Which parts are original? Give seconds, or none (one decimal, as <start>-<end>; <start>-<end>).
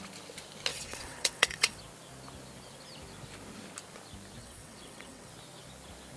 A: 0.0-0.7; 1.8-4.4; 5.3-6.2